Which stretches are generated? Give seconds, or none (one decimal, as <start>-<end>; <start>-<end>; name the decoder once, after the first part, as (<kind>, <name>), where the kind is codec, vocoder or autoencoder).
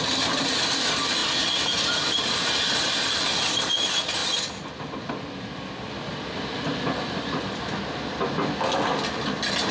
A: none